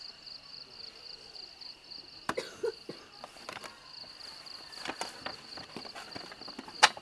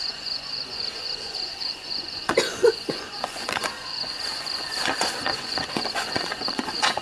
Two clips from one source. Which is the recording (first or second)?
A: first